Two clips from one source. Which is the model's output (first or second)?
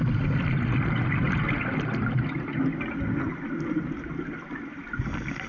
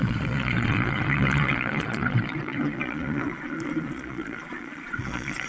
second